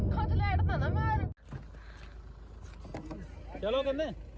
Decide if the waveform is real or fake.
real